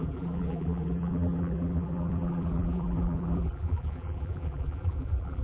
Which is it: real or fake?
fake